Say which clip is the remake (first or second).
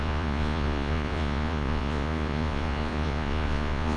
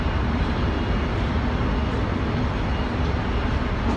first